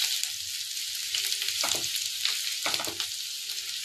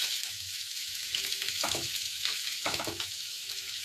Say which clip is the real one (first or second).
first